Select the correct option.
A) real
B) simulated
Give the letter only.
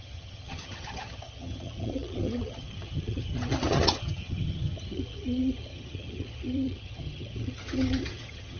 B